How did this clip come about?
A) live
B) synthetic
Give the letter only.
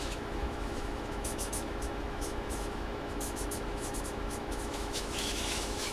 B